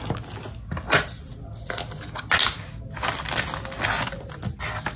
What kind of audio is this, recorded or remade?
recorded